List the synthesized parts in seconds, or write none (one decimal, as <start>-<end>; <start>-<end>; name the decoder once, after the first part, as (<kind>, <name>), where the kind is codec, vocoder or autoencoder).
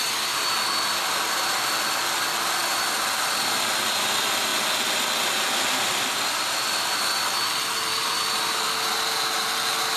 0.0-4.5 (vocoder, BigVGAN v2); 5.2-10.0